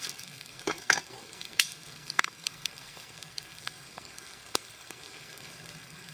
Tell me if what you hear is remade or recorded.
remade